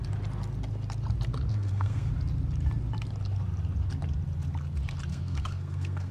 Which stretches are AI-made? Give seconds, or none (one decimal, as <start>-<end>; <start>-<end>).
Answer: 1.5-2.1; 5.1-6.1